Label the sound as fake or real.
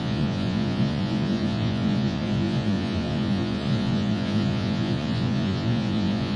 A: fake